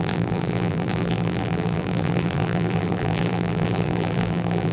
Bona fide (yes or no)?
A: no